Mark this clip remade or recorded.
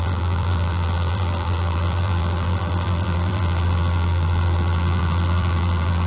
remade